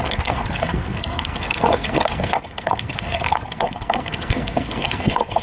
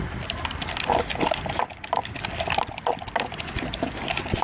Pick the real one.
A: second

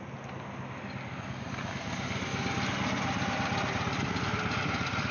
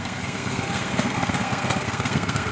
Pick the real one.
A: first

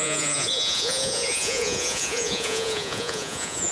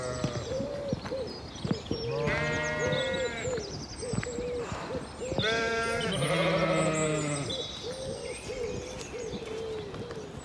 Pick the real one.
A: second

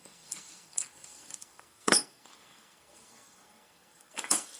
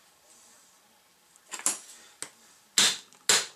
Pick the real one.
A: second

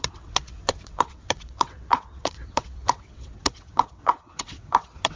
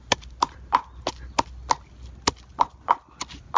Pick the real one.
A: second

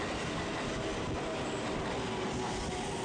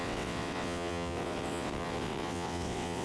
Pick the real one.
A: first